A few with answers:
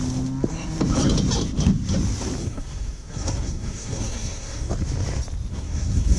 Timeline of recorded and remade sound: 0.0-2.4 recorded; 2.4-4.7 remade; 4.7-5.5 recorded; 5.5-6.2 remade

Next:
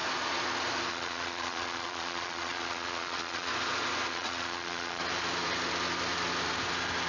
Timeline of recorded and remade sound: 0.0-0.9 recorded; 0.9-3.5 remade; 3.5-4.1 recorded; 4.1-5.0 remade; 5.0-7.1 recorded

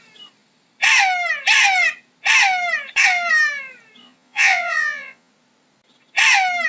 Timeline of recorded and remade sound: 0.0-4.0 recorded; 4.0-5.3 remade; 5.3-6.7 recorded

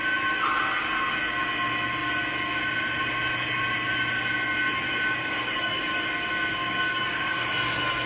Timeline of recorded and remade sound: 0.0-5.2 recorded; 5.2-5.8 remade; 5.8-6.6 recorded; 6.6-7.5 remade; 7.5-8.1 recorded